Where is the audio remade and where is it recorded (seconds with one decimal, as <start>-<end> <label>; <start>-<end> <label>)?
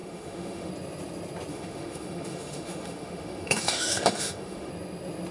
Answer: 0.0-0.7 remade; 0.7-1.5 recorded; 1.5-4.7 remade; 4.7-5.3 recorded